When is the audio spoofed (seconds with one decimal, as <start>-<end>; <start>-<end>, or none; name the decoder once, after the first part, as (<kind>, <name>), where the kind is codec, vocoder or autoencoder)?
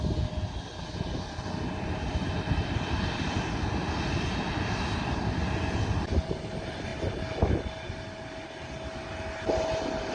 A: none